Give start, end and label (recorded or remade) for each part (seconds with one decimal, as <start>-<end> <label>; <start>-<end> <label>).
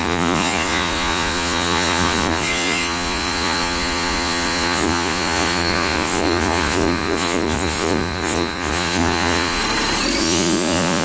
0.0-9.6 remade; 9.6-10.2 recorded; 10.2-11.0 remade